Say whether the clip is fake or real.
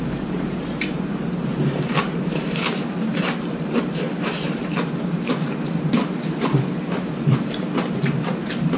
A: fake